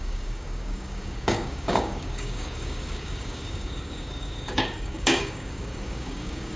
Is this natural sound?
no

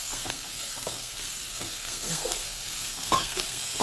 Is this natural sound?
no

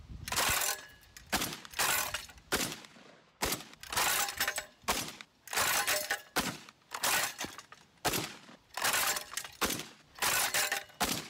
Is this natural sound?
yes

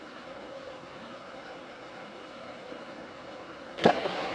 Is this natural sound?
no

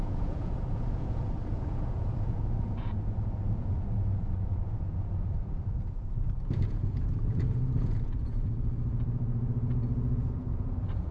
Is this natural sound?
no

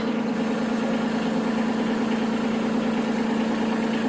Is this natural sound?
yes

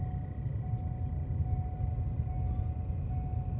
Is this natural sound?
yes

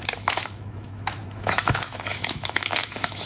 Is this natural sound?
no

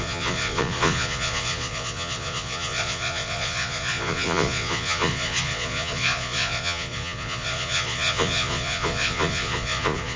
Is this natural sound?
no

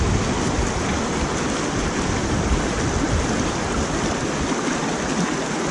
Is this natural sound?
yes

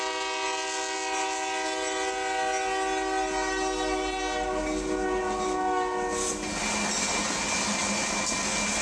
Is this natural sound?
yes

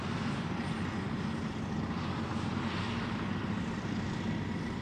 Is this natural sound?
yes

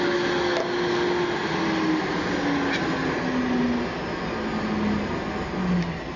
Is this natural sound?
yes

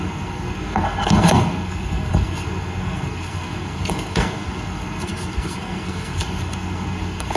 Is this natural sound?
no